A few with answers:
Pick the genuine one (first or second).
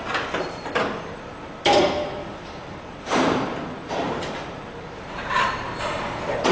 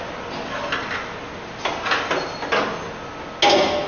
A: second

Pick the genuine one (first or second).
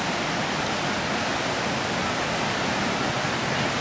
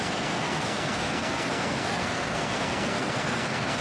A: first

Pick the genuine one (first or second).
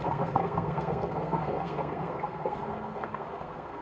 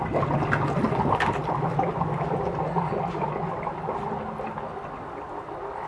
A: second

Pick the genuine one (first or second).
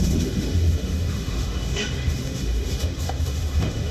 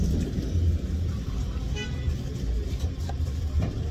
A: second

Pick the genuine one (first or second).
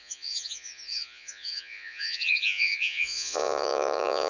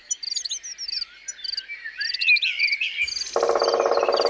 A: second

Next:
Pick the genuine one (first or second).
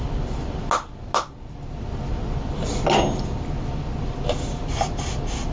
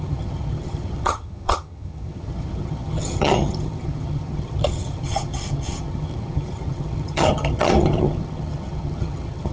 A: first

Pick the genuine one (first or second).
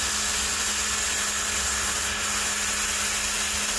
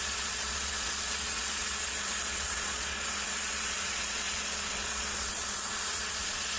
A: first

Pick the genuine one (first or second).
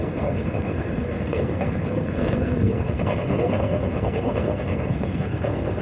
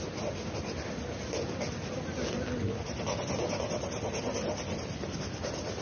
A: second